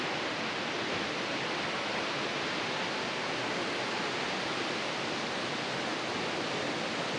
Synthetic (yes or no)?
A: no